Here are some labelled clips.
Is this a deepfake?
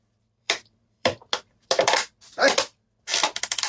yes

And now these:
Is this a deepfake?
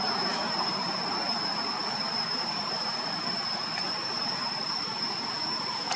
yes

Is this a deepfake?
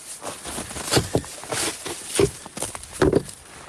no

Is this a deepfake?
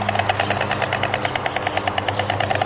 no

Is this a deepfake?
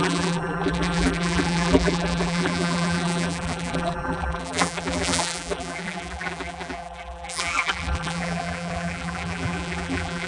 yes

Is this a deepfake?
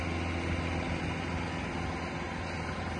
no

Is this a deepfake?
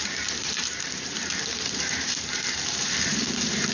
yes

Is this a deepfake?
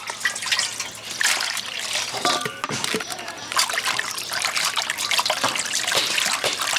yes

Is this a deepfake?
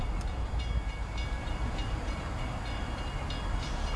yes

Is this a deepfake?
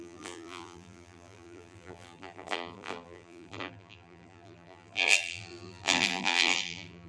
yes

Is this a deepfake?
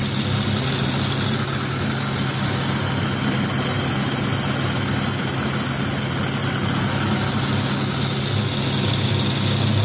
no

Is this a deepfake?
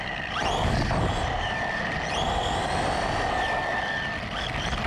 no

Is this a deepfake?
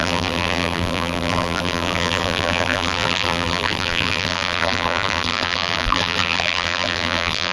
yes